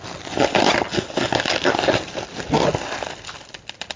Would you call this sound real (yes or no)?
yes